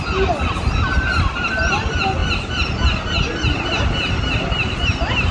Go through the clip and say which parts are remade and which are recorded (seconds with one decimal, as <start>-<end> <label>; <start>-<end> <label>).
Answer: 0.0-5.3 recorded